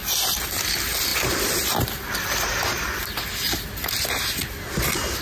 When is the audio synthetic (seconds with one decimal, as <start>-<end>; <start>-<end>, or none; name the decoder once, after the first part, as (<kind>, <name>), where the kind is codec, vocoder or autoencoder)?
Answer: 0.0-0.5 (vocoder, BigVGAN v2)

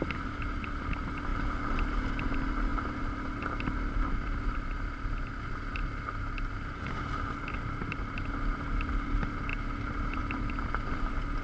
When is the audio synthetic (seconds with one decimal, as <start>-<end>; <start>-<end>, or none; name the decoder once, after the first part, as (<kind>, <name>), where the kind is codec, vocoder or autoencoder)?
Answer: none